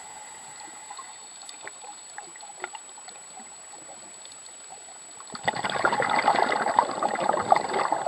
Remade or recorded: recorded